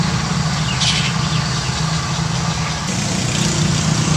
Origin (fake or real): real